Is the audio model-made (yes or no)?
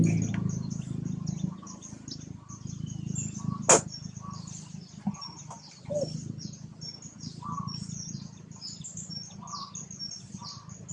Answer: no